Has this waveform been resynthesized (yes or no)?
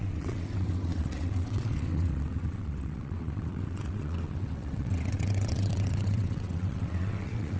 yes